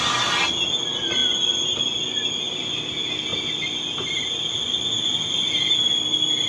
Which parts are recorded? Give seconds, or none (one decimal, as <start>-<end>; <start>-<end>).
0.0-6.5

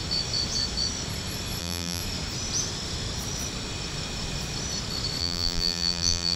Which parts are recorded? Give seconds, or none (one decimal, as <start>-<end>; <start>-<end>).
0.0-1.6; 2.0-5.2

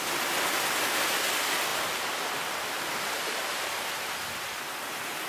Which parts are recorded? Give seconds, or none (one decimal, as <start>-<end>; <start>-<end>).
0.0-5.3

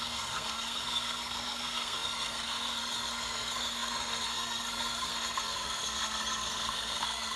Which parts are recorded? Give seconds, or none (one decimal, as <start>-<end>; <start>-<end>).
none

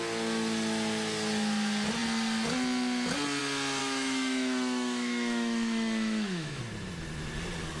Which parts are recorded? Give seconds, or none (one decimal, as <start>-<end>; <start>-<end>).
0.0-3.8; 6.6-7.8

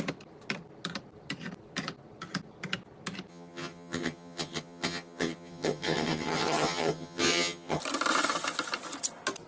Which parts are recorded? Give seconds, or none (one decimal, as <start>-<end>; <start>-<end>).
0.0-3.3; 7.8-9.5

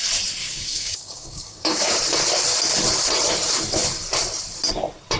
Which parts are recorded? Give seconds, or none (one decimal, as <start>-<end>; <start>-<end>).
0.0-0.4; 2.0-5.2

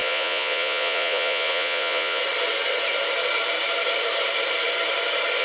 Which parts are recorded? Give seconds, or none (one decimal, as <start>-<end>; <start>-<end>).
2.2-5.4